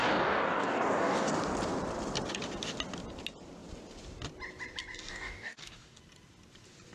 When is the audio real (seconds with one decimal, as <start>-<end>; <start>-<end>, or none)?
1.3-5.1; 6.0-6.9